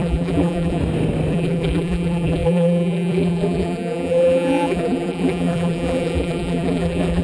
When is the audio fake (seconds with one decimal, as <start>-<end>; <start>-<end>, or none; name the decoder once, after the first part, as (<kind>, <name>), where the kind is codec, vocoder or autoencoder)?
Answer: 0.0-0.8 (vocoder, BigVGAN v2); 1.3-7.2